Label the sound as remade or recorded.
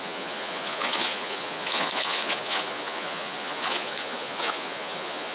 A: remade